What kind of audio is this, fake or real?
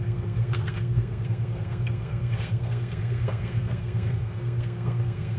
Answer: fake